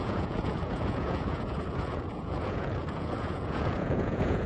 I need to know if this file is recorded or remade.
remade